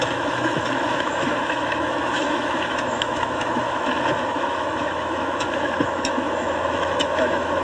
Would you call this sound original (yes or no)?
no